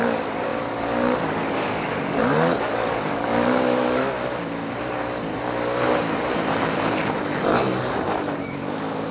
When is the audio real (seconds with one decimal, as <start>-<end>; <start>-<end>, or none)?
4.0-8.3